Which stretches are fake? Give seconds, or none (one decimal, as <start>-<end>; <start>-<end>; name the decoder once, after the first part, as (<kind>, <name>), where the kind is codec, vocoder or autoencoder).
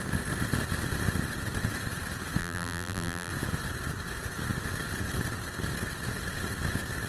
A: 2.4-3.3 (vocoder, BigVGAN v2)